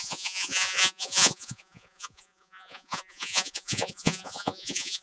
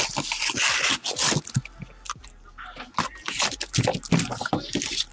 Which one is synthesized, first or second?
first